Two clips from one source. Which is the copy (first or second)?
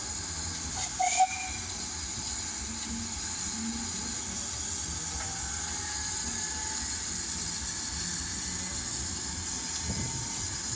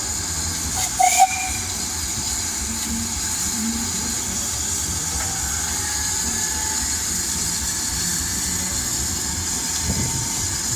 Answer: second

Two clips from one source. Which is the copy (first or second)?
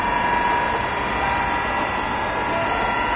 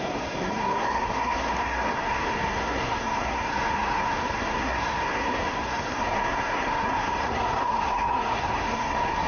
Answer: second